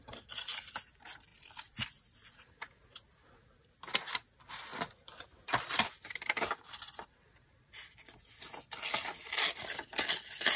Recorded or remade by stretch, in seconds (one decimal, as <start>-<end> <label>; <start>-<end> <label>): 0.0-1.3 recorded; 1.3-2.3 remade; 2.3-4.7 recorded; 4.7-7.7 remade; 7.7-10.6 recorded